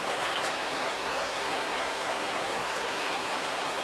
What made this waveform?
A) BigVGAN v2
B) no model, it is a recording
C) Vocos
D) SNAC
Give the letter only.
D